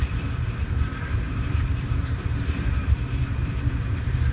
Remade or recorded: remade